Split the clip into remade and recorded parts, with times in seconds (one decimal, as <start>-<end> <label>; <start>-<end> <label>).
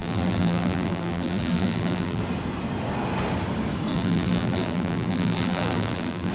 0.0-2.2 remade; 2.2-3.9 recorded; 3.9-6.3 remade